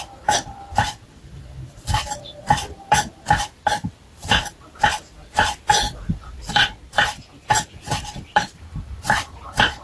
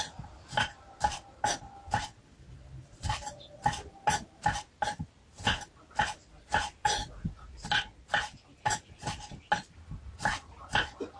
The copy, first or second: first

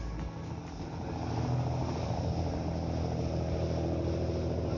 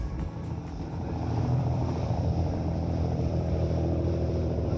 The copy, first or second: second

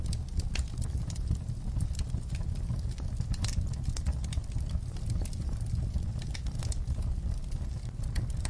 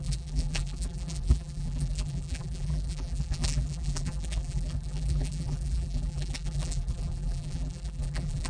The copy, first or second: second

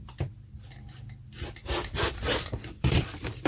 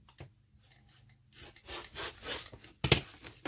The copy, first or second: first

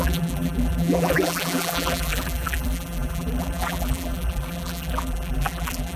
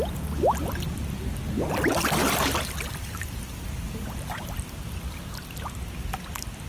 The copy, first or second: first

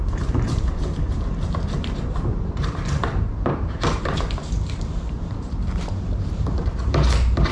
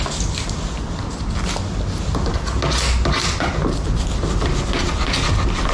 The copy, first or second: first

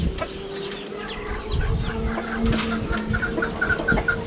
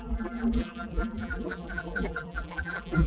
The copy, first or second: second